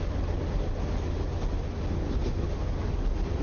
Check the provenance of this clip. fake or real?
real